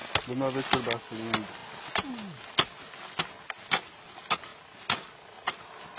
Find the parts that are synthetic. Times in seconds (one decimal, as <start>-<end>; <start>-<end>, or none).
none